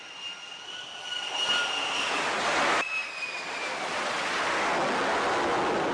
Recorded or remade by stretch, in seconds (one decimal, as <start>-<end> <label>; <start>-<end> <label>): 0.0-5.9 recorded